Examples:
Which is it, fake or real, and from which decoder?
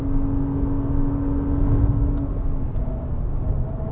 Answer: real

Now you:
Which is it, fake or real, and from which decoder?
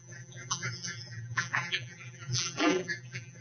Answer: fake, vocoder, BigVGAN v2